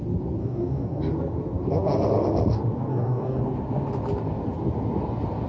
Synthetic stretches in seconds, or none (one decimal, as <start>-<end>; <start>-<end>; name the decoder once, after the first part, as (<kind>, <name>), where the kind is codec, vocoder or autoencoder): 0.4-1.0 (codec, DAC); 2.9-3.4